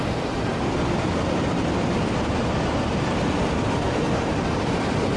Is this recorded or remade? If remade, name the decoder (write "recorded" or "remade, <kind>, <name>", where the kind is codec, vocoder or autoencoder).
recorded